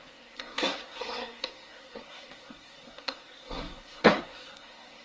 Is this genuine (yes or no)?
no